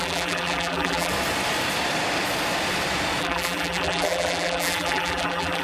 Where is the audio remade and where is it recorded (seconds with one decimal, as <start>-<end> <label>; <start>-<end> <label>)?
0.0-1.1 remade; 1.1-3.2 recorded; 3.2-5.6 remade